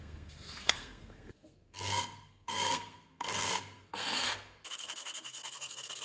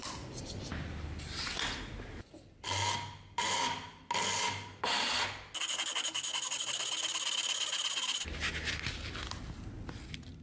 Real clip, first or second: second